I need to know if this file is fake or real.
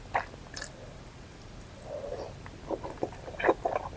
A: real